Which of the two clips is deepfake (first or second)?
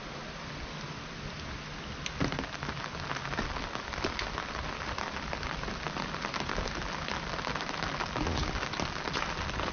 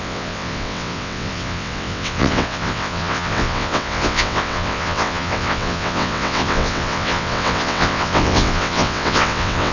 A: second